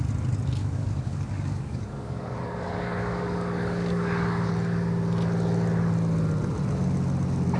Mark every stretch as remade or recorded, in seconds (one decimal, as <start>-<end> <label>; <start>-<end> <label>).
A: 0.0-0.6 recorded; 0.6-4.5 remade; 4.5-7.6 recorded